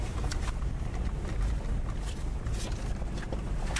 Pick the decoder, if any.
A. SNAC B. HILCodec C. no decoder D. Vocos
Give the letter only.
C